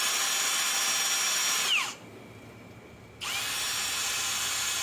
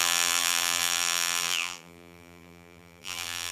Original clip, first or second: first